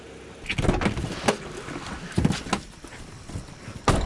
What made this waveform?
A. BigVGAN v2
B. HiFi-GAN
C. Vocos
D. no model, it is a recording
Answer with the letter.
D